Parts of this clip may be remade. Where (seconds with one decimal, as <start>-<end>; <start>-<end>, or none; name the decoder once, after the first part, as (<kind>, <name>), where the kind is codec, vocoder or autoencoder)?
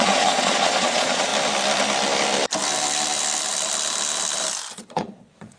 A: 0.0-1.3 (vocoder, Vocos); 4.7-5.6